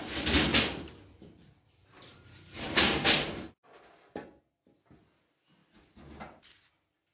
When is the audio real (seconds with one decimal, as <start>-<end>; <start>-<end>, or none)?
0.0-0.5; 4.4-7.1

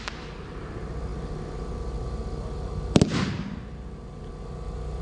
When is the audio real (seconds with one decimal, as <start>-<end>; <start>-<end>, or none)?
0.0-5.0